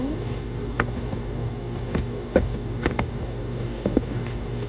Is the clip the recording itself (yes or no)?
no